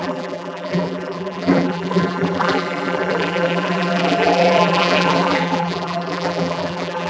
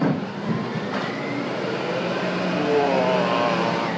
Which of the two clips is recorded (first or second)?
second